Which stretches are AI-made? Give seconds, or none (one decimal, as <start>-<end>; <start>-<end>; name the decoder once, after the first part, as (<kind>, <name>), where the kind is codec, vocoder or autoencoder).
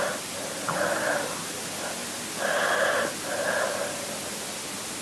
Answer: none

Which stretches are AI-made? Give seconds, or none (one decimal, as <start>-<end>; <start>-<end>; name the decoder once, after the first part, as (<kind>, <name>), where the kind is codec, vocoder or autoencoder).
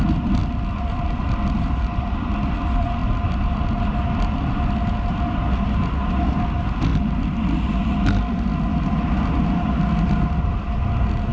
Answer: 0.4-2.1 (vocoder, BigVGAN v2); 3.0-3.6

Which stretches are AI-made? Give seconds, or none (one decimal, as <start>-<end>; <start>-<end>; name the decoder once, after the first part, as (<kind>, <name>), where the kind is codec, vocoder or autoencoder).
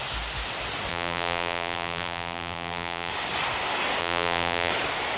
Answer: 0.9-3.1 (vocoder, BigVGAN v2); 4.0-4.7